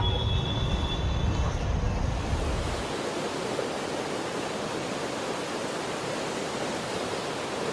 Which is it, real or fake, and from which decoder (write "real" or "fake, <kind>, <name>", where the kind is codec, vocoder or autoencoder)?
real